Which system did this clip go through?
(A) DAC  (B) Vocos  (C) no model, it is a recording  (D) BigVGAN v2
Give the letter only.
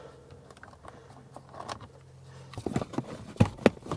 C